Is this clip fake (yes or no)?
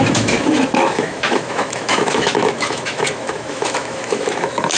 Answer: yes